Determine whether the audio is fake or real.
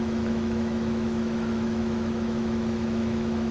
fake